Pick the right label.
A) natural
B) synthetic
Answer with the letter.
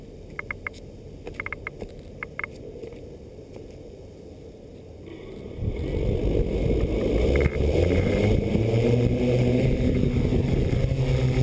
A